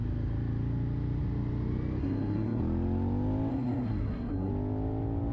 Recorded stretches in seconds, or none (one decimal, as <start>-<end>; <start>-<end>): 0.0-2.0; 2.6-3.5; 4.5-5.3